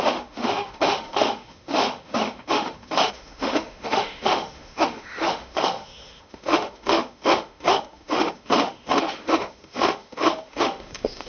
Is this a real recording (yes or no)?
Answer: no